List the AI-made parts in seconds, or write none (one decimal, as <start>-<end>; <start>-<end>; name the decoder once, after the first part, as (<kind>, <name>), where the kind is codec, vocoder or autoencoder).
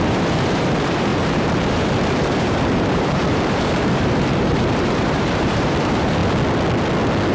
0.0-6.2 (vocoder, BigVGAN v2)